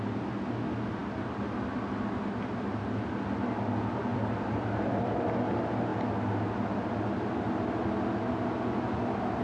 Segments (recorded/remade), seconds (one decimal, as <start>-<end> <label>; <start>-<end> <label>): 0.0-4.1 recorded; 4.1-5.2 remade; 5.2-9.4 recorded